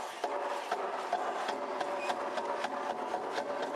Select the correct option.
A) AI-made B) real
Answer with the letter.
B